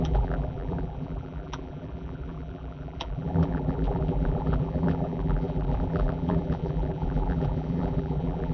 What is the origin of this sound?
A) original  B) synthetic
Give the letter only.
B